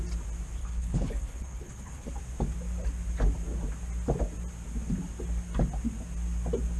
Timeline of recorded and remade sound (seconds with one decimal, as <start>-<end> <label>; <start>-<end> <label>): 0.0-0.6 recorded; 0.6-2.1 remade; 2.1-6.8 recorded